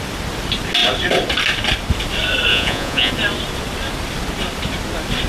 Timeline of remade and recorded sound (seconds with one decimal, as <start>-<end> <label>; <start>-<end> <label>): 0.0-2.5 recorded; 2.5-3.1 remade; 3.1-5.3 recorded